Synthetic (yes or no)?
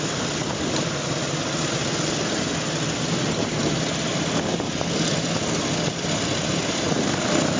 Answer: no